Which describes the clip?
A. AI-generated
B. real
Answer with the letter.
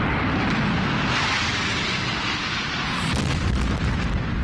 B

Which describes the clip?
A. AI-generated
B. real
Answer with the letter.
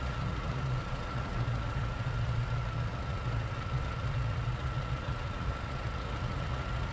A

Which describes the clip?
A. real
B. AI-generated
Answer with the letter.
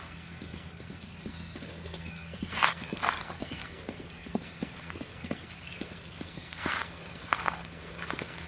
B